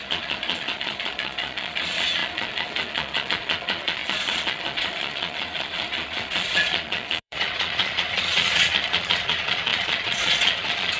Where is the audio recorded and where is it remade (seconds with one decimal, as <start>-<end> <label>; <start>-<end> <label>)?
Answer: 0.0-11.0 remade

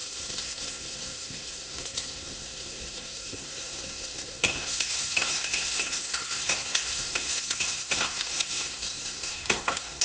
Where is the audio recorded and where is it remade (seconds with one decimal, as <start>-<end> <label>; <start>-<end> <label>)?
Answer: 0.0-10.0 remade

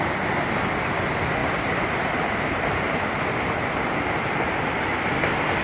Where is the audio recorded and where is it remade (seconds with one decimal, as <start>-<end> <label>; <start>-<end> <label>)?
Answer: 0.0-1.4 recorded; 1.4-4.6 remade; 4.6-5.6 recorded

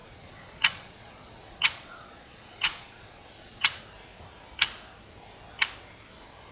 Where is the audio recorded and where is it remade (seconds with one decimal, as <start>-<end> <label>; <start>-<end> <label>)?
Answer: 0.0-3.8 remade; 3.8-6.5 recorded

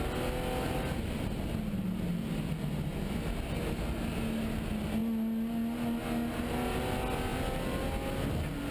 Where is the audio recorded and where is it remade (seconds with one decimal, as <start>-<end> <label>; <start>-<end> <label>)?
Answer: 0.0-8.7 recorded

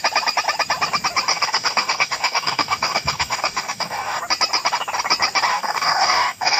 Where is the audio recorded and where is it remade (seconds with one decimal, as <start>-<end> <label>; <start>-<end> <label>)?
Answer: 0.0-1.3 recorded; 1.3-4.2 remade; 4.2-5.5 recorded; 5.5-6.6 remade

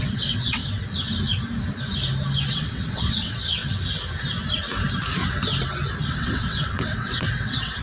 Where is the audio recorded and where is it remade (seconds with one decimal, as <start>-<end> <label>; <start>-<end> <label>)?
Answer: 0.0-0.6 remade; 0.6-2.5 recorded; 2.5-3.6 remade; 3.6-6.1 recorded; 6.1-7.8 remade